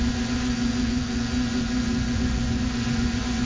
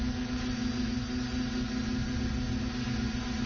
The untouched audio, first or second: second